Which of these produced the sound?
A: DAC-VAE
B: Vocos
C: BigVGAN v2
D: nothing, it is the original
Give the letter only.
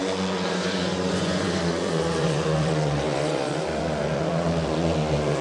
B